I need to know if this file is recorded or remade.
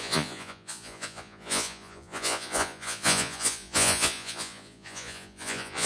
remade